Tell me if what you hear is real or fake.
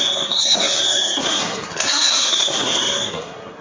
fake